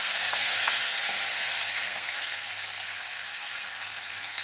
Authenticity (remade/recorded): remade